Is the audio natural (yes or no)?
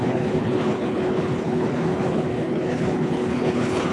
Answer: no